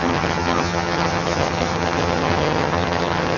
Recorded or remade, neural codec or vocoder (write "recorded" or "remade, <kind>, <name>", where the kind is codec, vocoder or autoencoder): remade, vocoder, HiFi-GAN